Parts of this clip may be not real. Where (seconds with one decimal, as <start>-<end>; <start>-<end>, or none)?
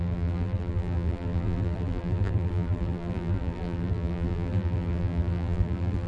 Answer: 0.0-6.1